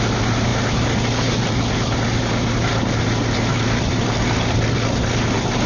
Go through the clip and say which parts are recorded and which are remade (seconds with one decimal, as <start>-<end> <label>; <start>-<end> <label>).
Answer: 0.0-5.7 recorded